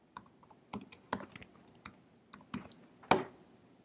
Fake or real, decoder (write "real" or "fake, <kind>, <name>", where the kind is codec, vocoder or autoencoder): real